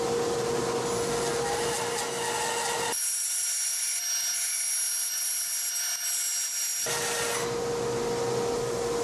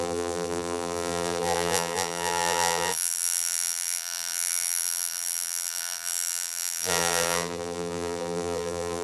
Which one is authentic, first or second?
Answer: first